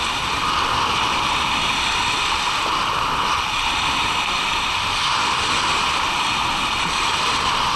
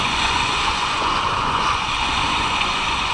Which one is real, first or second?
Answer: first